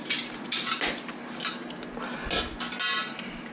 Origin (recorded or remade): recorded